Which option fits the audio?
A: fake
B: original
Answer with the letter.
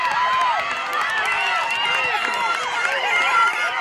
A